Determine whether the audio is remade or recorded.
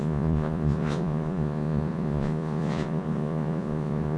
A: remade